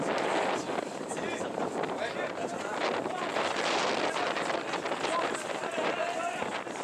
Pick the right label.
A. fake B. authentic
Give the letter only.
B